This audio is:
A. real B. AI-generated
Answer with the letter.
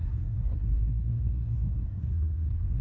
B